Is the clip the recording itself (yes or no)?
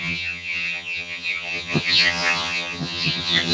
no